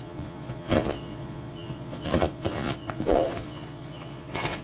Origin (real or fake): fake